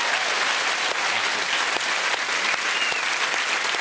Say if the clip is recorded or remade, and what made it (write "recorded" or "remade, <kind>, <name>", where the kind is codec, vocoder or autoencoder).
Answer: recorded